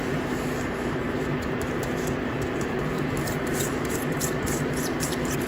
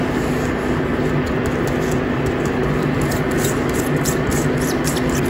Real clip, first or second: second